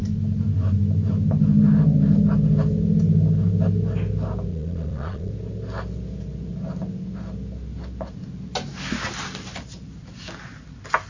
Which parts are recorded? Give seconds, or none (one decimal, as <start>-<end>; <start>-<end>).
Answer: 0.0-4.5; 5.3-11.1